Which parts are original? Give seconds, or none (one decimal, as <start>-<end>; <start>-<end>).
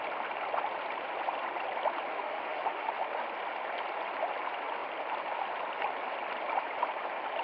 0.0-2.1; 2.9-7.4